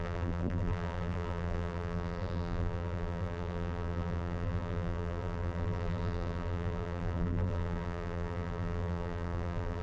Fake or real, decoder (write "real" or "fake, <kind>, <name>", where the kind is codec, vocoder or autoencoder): fake, vocoder, BigVGAN v2